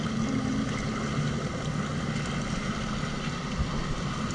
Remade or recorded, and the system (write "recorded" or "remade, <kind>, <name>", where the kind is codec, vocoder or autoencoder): recorded